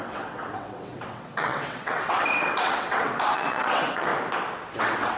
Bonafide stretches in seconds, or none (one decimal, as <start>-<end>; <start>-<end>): 4.1-4.8